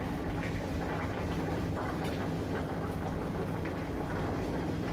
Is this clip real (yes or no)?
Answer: no